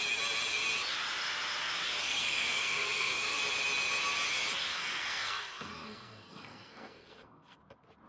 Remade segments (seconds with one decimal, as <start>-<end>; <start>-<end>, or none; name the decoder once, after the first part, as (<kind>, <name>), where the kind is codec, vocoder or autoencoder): 2.0-3.4 (codec, SNAC); 4.7-7.6

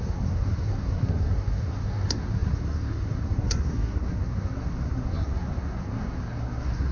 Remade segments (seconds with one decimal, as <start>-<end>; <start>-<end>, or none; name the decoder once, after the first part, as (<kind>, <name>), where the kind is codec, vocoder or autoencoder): 0.0-6.9 (codec, SNAC)

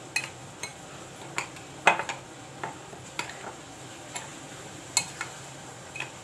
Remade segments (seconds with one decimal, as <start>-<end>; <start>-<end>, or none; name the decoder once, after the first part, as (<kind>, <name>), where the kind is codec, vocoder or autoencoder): none

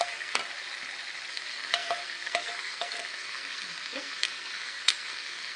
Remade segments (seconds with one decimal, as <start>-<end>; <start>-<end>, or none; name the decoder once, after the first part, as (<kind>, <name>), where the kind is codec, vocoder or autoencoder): 0.0-0.4 (codec, SNAC); 1.3-5.6

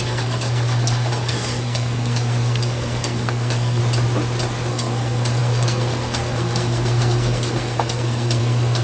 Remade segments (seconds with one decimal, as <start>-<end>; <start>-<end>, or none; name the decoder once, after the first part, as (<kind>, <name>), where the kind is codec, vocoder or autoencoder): 0.0-3.8 (codec, SNAC); 4.7-8.8